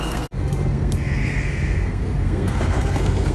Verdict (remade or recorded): remade